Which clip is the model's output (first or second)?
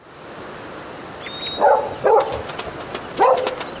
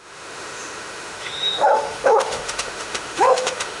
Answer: second